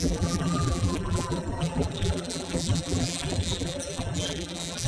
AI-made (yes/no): yes